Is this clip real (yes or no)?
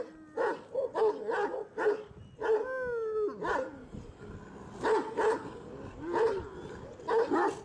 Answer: yes